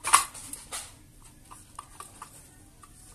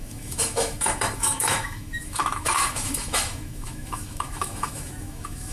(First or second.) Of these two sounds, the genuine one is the first